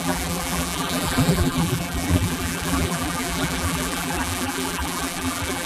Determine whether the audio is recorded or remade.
remade